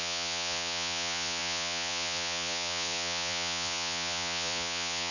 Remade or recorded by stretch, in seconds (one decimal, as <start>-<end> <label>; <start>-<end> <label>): 0.0-5.1 remade